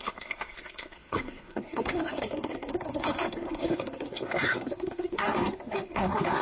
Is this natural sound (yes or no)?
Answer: no